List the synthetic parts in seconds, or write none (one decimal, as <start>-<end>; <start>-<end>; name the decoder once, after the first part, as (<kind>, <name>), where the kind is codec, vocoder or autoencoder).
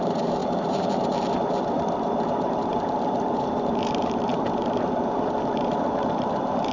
0.0-6.7 (vocoder, BigVGAN v2)